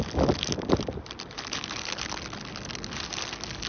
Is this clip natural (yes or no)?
yes